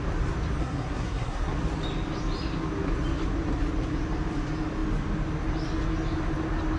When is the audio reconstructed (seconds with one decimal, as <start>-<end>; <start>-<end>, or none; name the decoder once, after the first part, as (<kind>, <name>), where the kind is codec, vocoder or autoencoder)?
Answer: 0.6-1.5 (codec, SNAC)